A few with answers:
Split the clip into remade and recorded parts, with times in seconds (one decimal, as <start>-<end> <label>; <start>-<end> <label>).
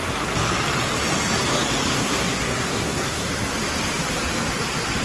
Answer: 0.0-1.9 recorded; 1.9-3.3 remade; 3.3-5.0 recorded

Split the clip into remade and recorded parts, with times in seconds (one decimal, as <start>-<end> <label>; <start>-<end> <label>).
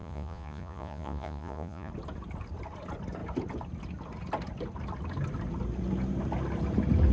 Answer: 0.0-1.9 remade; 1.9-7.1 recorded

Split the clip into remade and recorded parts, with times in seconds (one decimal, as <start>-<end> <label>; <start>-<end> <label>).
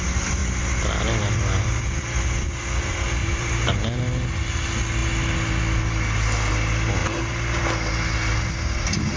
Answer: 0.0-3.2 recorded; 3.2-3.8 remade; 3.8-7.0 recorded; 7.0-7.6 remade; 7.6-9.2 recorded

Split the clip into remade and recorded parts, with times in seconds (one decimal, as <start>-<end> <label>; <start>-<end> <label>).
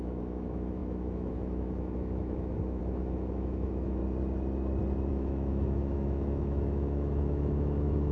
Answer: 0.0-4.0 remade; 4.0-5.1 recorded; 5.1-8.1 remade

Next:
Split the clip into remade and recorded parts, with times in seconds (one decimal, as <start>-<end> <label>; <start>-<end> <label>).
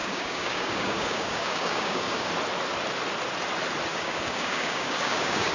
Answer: 0.0-2.3 remade; 2.3-3.9 recorded; 3.9-5.5 remade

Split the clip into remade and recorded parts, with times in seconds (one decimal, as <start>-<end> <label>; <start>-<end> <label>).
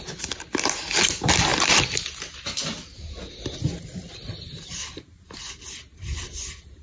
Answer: 0.0-6.8 recorded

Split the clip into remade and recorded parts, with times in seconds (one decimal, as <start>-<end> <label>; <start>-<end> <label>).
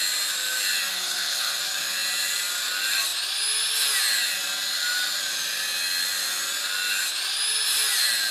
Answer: 0.0-0.9 recorded; 0.9-1.6 remade; 1.6-8.3 recorded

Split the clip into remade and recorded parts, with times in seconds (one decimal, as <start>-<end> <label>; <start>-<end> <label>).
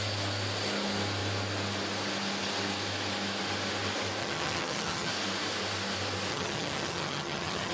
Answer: 0.0-4.2 recorded; 4.2-5.1 remade; 5.1-6.3 recorded; 6.3-7.7 remade